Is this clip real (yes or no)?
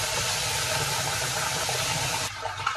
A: yes